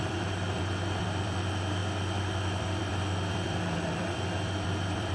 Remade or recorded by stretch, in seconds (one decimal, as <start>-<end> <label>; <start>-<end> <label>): 0.0-1.8 remade; 1.8-2.6 recorded; 2.6-5.1 remade